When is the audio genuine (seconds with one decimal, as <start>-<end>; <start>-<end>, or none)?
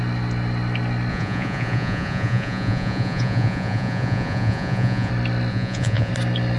0.0-1.1; 5.1-5.5; 6.1-6.6